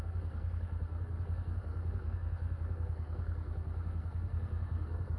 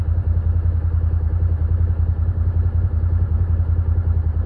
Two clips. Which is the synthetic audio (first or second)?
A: first